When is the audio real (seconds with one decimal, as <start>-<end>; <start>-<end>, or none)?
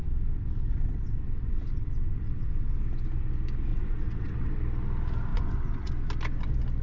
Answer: 2.8-3.7; 4.5-5.3; 5.9-6.8